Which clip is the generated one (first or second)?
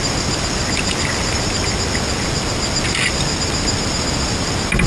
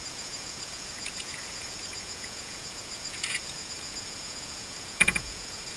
second